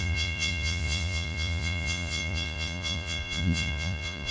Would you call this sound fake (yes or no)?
yes